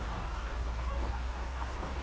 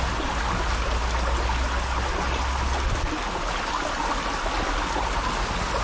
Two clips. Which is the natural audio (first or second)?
second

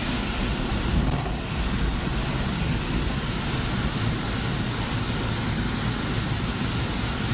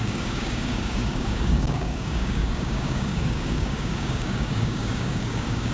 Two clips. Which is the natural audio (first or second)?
first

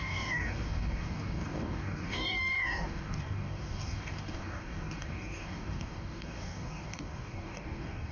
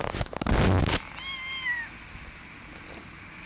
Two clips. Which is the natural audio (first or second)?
second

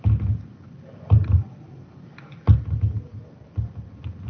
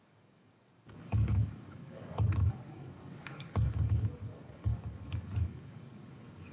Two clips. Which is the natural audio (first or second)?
first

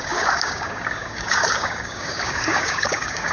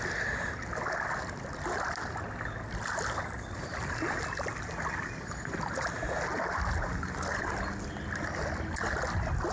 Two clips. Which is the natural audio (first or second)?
second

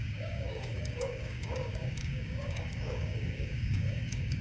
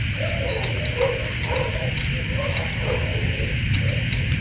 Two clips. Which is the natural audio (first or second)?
second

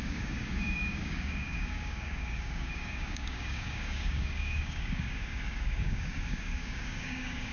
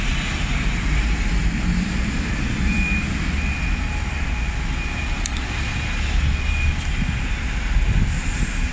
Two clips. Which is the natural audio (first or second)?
second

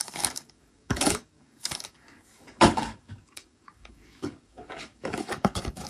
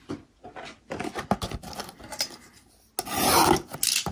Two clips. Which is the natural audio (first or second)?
second